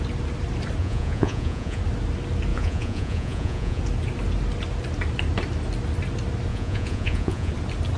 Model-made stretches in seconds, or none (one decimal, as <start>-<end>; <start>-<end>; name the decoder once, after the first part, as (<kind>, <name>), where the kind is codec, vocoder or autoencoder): 0.8-1.8 (vocoder, Vocos); 2.5-3.8; 6.5-7.5